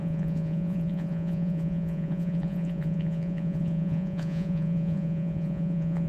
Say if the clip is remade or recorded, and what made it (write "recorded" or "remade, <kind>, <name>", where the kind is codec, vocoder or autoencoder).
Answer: remade, vocoder, Vocos